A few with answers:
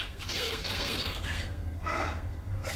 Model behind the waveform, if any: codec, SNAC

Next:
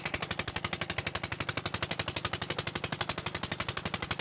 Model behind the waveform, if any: none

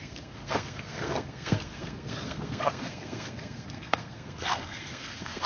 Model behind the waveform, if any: codec, SNAC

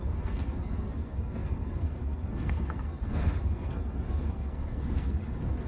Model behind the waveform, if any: codec, SNAC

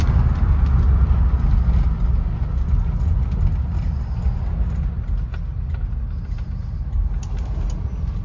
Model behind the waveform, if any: none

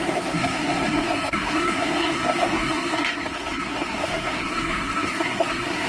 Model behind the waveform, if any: codec, SNAC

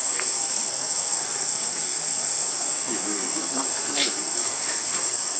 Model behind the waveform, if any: codec, SNAC